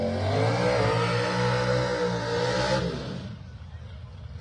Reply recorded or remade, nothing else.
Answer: recorded